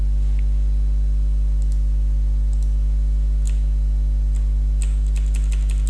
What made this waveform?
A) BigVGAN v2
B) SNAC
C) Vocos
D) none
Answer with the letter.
D